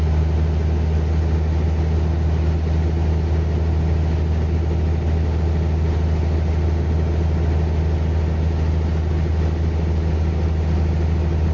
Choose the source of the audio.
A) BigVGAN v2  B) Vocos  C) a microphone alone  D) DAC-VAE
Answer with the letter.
C